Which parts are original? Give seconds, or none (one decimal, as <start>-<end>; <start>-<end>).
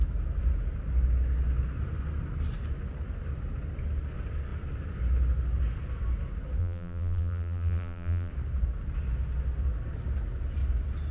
0.0-6.6; 8.3-11.1